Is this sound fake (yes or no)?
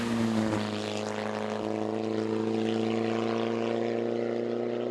no